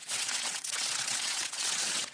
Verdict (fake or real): fake